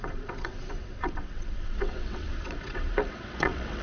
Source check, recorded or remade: remade